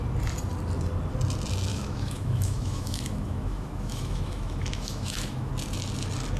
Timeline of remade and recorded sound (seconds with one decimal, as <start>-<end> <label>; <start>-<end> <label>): 0.0-1.7 recorded; 1.7-5.5 remade; 5.5-6.4 recorded